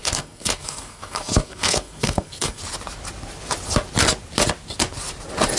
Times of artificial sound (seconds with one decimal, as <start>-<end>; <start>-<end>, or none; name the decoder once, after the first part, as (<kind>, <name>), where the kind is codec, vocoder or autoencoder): 0.0-2.6 (codec, SNAC)